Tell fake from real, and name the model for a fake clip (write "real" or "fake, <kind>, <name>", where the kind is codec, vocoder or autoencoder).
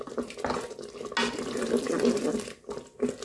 real